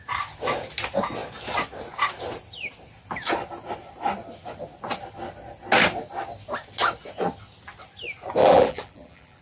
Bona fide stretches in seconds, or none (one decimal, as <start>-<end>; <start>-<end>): 0.0-8.4

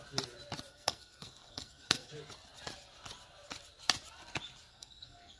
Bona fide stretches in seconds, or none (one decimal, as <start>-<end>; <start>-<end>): 0.0-0.7; 2.1-4.7

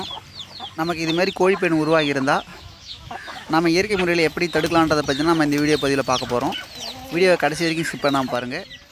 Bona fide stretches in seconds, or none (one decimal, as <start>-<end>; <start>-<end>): 0.0-2.5; 3.9-8.9

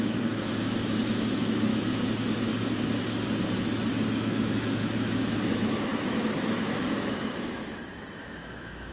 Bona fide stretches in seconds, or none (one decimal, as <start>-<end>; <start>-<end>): 1.7-3.9

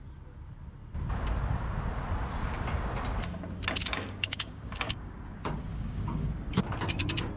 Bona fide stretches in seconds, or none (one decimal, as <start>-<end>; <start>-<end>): 0.0-3.8; 5.1-5.7; 6.5-7.4

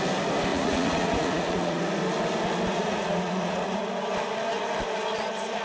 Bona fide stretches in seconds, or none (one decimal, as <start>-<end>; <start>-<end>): 0.0-0.5; 1.8-2.8; 3.8-5.6

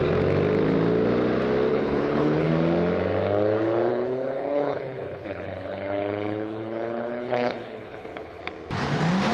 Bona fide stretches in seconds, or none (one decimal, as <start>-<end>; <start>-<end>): 0.0-1.7; 2.5-3.9; 8.4-9.3